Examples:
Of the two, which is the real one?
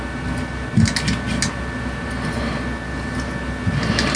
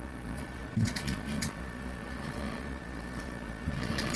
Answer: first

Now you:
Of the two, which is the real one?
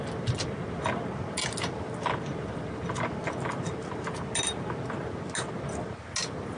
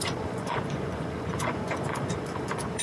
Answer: first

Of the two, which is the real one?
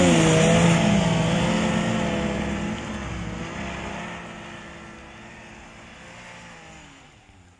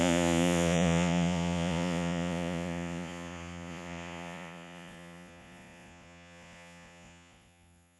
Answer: first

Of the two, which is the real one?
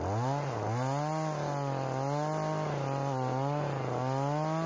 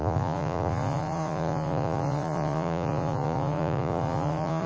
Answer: first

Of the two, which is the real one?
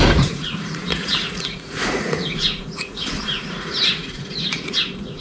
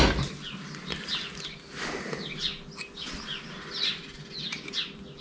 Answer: second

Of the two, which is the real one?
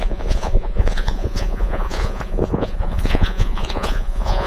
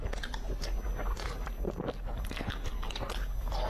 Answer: second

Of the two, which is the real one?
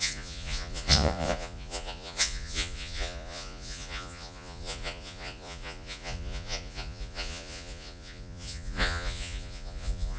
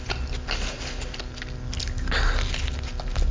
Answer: second